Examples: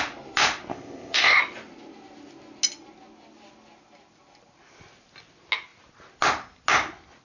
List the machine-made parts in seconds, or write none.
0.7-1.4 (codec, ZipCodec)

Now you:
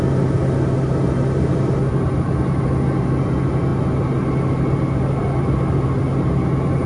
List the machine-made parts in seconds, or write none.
none